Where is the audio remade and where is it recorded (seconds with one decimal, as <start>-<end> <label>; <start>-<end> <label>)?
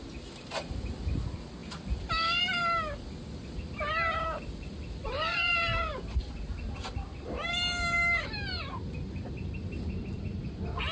0.0-10.9 recorded